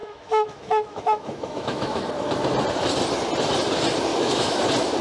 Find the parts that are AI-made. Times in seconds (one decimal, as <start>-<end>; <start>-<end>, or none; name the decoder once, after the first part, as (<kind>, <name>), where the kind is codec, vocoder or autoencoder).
0.0-2.1 (autoencoder, DAC-VAE); 4.1-4.6

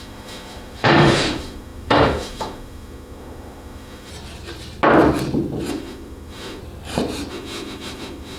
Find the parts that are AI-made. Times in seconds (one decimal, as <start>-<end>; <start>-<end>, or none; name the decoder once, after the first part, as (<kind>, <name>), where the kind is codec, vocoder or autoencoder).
0.0-4.1 (autoencoder, DAC-VAE); 5.7-6.6; 7.3-8.4

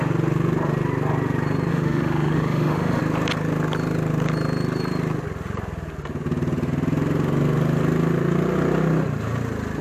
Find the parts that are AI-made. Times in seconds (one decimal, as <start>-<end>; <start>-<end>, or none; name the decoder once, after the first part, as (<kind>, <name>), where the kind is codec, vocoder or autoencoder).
1.7-3.0 (autoencoder, DAC-VAE)

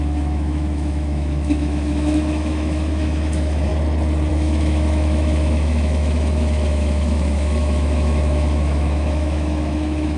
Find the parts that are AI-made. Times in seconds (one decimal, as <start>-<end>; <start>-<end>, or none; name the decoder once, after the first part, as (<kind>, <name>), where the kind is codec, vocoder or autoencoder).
0.0-3.7 (autoencoder, DAC-VAE); 4.3-10.2

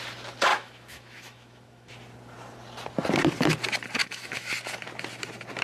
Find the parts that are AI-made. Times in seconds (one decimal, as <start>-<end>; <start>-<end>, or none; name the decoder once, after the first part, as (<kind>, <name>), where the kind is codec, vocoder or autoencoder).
0.5-1.9 (autoencoder, DAC-VAE); 4.0-4.5

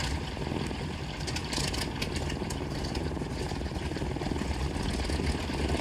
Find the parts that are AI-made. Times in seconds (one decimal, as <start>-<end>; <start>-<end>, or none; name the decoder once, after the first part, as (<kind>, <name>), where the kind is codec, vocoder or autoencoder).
none

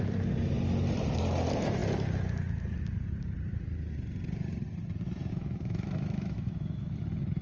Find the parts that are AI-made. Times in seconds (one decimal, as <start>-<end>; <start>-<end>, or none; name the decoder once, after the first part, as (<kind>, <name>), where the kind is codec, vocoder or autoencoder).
5.3-7.0 (autoencoder, DAC-VAE)

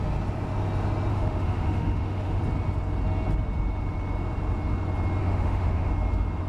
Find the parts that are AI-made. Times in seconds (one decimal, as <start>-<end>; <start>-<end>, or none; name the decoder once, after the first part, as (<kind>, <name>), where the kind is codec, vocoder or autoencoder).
1.1-2.4 (autoencoder, DAC-VAE); 5.2-5.9